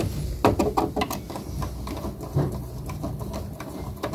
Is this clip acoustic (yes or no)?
yes